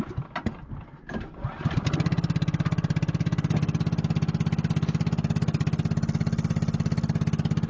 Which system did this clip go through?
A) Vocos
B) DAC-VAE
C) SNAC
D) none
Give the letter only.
D